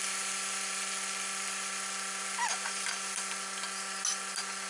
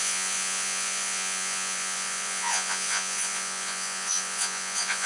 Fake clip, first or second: second